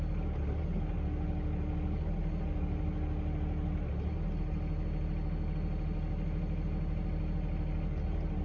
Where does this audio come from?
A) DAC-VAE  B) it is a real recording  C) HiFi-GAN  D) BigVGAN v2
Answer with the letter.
B